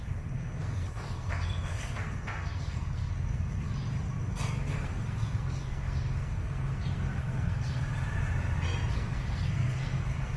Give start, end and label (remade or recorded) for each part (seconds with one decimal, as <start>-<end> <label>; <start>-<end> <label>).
0.0-3.7 remade; 3.7-4.3 recorded; 4.3-7.8 remade; 7.8-8.9 recorded; 8.9-10.4 remade